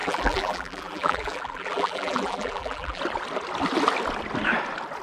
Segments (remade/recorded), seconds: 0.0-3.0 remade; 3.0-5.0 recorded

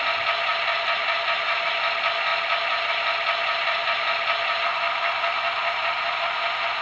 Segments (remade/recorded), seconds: 0.0-0.5 recorded; 0.5-1.1 remade; 1.1-2.3 recorded; 2.3-6.2 remade; 6.2-6.8 recorded

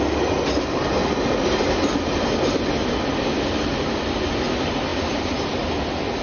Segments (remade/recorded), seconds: 0.0-6.2 recorded

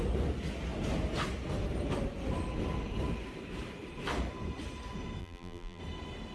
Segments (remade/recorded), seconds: 0.0-5.2 recorded; 5.2-5.8 remade; 5.8-6.3 recorded